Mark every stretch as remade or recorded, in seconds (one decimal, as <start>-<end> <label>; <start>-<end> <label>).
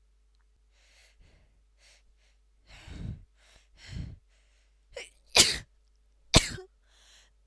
0.0-7.5 recorded